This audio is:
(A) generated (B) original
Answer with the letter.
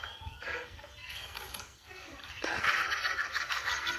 A